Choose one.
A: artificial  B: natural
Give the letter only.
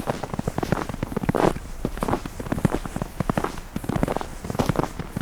B